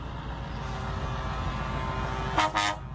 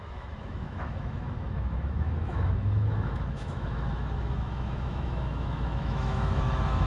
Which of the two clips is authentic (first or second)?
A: first